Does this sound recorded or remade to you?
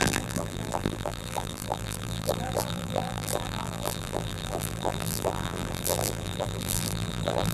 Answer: remade